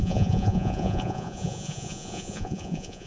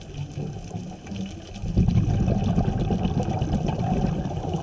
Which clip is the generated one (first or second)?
first